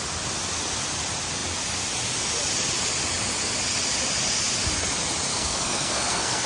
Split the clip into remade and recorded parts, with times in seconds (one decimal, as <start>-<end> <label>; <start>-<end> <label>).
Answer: 0.0-5.3 recorded; 5.3-6.5 remade